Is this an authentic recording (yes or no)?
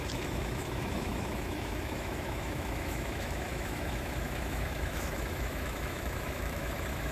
no